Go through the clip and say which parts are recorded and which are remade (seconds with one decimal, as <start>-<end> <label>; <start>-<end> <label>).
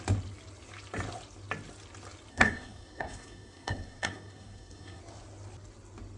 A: 0.0-2.3 recorded; 2.3-5.0 remade; 5.0-6.2 recorded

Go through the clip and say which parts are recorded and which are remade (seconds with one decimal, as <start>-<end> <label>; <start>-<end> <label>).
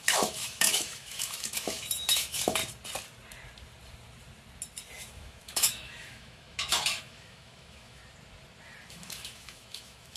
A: 0.0-2.6 remade; 2.6-5.0 recorded; 5.0-8.0 remade; 8.0-8.9 recorded; 8.9-10.2 remade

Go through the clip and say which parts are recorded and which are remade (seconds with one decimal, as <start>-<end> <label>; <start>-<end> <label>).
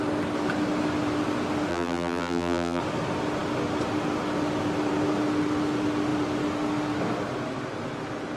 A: 0.0-1.7 recorded; 1.7-2.8 remade; 2.8-8.4 recorded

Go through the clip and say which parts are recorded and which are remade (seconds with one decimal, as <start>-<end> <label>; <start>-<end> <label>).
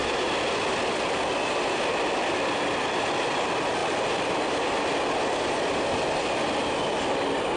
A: 0.0-7.6 recorded